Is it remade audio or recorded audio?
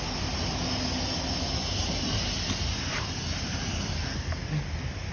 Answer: recorded